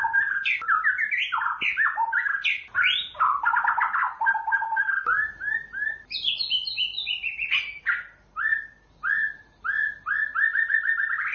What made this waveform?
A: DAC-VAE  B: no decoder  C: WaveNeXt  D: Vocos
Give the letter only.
B